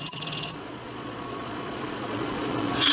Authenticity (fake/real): fake